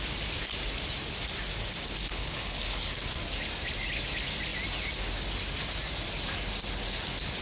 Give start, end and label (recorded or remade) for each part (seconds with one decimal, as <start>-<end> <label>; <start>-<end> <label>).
0.0-2.0 recorded; 2.0-2.9 remade; 2.9-7.4 recorded